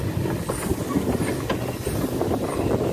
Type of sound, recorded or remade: recorded